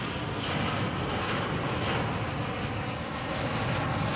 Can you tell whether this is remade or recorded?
recorded